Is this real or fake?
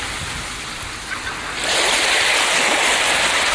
real